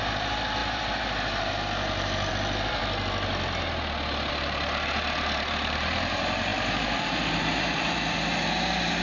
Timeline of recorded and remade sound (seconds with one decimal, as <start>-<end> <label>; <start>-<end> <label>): 0.0-2.8 remade; 2.8-4.3 recorded; 4.3-9.0 remade